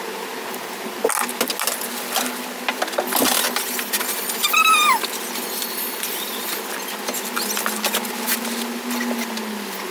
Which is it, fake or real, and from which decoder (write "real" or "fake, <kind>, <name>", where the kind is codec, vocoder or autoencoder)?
real